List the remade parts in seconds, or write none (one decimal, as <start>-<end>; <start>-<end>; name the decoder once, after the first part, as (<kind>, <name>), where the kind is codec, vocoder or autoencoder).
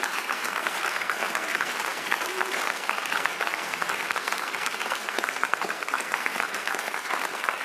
0.0-7.6 (codec, SNAC)